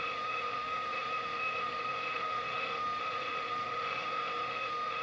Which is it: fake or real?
fake